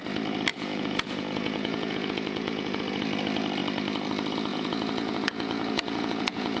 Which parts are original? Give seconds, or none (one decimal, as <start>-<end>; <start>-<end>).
0.0-0.5; 3.0-4.5